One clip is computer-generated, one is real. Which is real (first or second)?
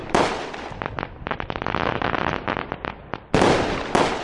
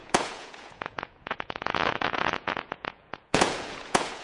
first